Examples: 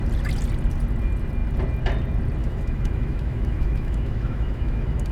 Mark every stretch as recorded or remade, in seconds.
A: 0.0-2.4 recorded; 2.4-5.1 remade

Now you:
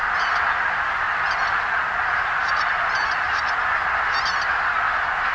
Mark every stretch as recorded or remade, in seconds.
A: 0.0-5.3 recorded

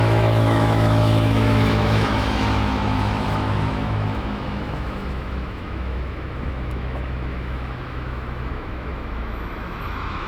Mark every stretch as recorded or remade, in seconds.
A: 0.0-10.3 remade

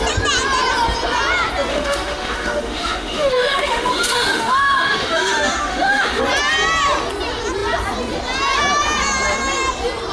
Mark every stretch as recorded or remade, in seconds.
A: 0.0-1.7 recorded; 1.7-6.2 remade; 6.2-10.1 recorded

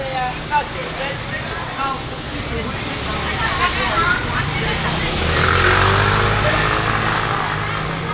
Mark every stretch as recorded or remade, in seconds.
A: 0.0-8.1 recorded

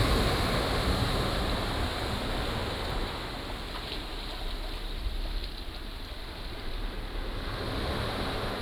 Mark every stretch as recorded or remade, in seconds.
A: 0.0-8.6 recorded

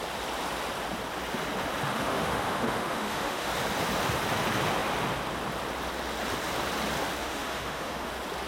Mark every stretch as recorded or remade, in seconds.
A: 0.0-1.9 recorded; 1.9-3.5 remade; 3.5-7.2 recorded; 7.2-8.1 remade; 8.1-8.5 recorded

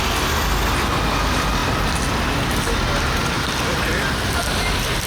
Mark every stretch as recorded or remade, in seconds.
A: 0.0-5.1 recorded